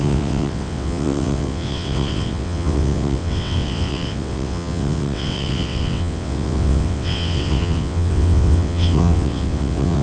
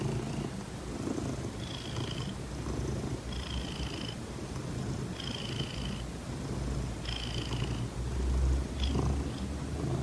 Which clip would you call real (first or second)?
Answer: second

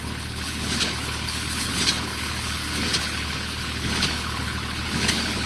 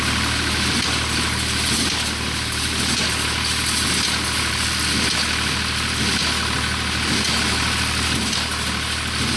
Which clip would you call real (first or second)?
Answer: second